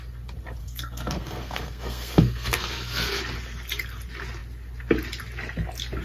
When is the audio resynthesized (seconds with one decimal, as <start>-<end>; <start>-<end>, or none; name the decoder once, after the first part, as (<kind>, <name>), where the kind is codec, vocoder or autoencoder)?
0.6-3.2 (codec, SNAC)